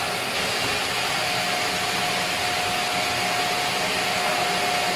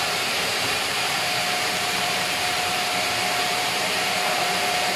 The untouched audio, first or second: first